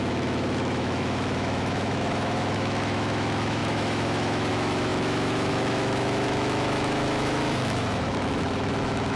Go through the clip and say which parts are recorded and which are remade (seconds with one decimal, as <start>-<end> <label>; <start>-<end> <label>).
0.0-9.2 remade